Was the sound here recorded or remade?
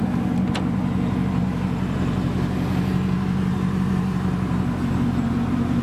recorded